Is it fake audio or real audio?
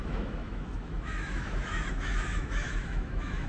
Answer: fake